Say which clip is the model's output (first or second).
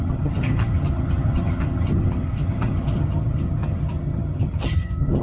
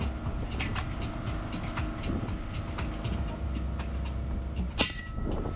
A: first